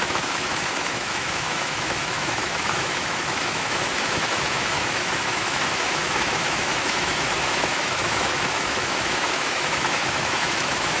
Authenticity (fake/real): fake